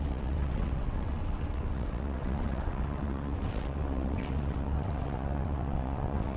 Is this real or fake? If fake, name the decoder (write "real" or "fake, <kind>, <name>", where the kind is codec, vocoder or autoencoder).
fake, vocoder, WaveNeXt